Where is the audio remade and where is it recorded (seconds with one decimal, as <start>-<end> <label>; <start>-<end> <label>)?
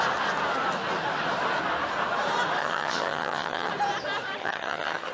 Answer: 0.0-2.6 recorded; 2.6-3.7 remade; 3.7-4.4 recorded; 4.4-5.1 remade